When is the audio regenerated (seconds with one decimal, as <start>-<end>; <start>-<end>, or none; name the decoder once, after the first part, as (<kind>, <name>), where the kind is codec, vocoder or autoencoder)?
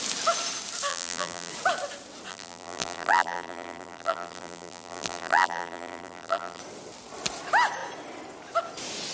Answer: 0.9-1.5 (vocoder, BigVGAN v2); 2.3-6.6